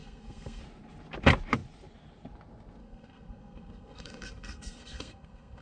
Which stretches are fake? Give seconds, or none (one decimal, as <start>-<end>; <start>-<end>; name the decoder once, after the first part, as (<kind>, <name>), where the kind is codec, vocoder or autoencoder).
0.0-0.6 (codec, SNAC); 2.8-5.6